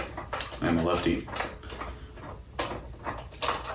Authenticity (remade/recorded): recorded